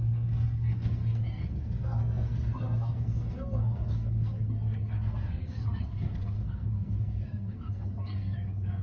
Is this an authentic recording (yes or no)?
no